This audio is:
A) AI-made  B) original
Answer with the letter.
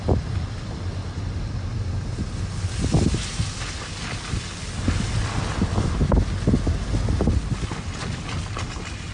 B